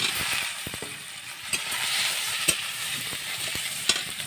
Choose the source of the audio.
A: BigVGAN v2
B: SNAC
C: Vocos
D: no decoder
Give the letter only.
A